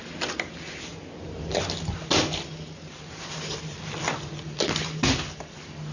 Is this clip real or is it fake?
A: real